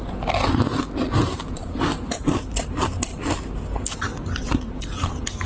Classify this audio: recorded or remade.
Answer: recorded